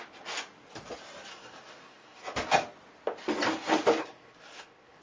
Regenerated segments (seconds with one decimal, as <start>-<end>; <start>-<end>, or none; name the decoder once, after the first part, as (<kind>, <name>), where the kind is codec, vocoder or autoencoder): 1.3-2.2 (codec, SNAC); 4.0-5.0